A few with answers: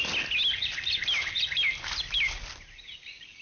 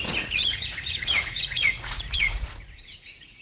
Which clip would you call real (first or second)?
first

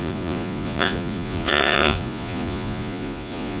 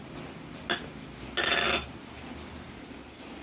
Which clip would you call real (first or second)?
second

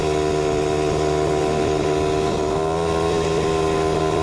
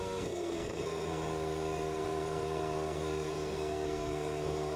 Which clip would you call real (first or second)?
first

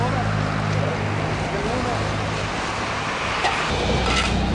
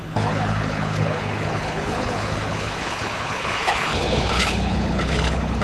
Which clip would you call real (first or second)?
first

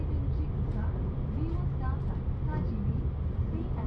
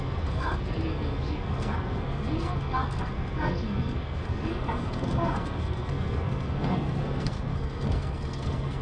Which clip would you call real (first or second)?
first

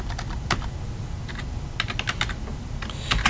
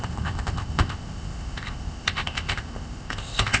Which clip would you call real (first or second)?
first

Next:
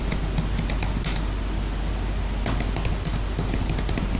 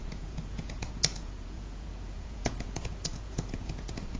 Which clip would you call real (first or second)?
first